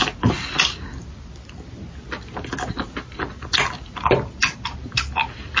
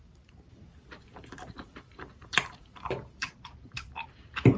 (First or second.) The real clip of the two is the first